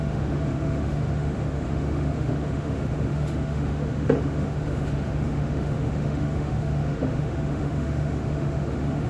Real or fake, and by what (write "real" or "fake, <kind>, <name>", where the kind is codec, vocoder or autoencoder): fake, autoencoder, DAC-VAE